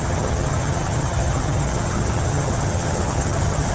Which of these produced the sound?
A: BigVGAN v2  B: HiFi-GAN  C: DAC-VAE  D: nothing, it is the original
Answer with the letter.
B